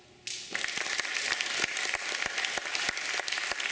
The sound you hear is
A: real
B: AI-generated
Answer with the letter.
A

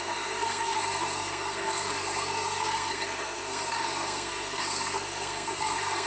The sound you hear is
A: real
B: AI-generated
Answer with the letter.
B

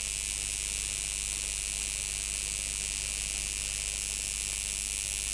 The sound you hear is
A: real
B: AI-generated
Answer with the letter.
A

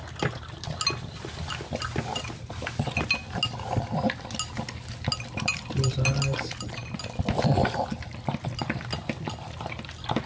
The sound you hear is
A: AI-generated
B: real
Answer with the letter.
B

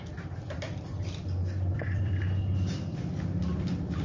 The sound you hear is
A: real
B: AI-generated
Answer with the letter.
B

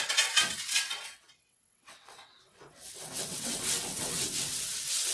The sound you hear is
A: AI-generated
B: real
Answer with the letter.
A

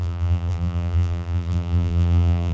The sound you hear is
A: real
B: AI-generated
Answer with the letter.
B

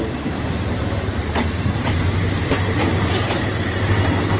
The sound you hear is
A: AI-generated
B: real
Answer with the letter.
B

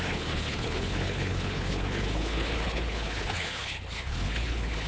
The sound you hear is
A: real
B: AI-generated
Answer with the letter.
B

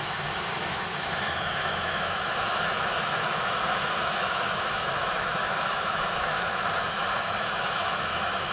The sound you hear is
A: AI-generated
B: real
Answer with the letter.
A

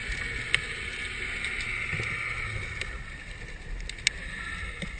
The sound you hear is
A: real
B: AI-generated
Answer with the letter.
A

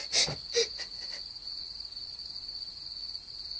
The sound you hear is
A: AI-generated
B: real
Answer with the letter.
A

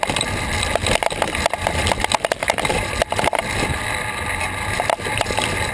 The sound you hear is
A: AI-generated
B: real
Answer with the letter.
B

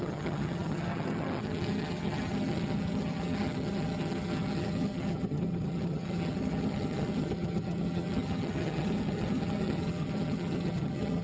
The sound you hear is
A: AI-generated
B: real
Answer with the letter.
A